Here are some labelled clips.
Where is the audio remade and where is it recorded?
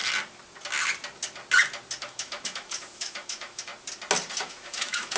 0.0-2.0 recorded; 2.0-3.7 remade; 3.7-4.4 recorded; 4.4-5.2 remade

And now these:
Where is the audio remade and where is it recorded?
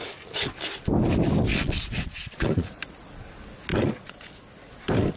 0.0-1.5 recorded; 1.5-2.8 remade; 2.8-3.7 recorded; 3.7-4.4 remade; 4.4-5.2 recorded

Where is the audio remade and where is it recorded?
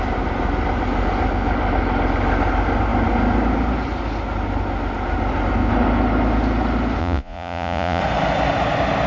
0.0-7.0 recorded; 7.0-8.0 remade; 8.0-9.1 recorded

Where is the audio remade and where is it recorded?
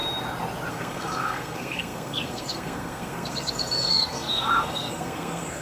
0.0-0.7 recorded; 0.7-5.6 remade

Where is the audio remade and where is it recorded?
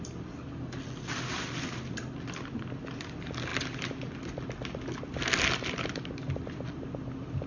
0.0-7.5 recorded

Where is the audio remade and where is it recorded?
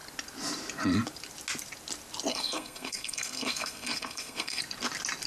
0.0-2.3 recorded; 2.3-4.6 remade; 4.6-5.3 recorded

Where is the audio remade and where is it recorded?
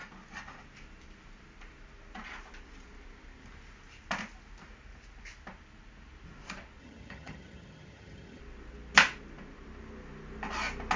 0.0-6.8 recorded; 6.8-8.4 remade; 8.4-11.0 recorded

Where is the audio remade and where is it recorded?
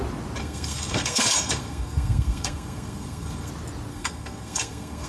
0.0-0.4 recorded; 0.4-3.5 remade; 3.5-3.9 recorded; 3.9-5.1 remade